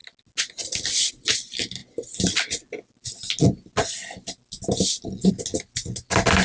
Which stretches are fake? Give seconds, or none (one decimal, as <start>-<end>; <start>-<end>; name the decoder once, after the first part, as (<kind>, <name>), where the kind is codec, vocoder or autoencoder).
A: none